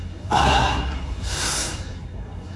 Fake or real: fake